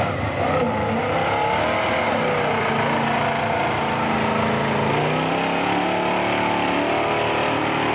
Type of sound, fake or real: real